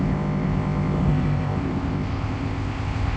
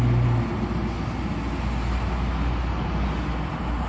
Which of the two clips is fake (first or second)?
first